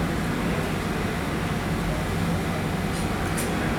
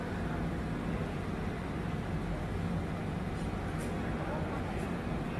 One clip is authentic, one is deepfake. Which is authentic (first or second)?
first